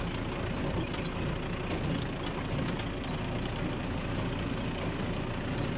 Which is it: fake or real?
real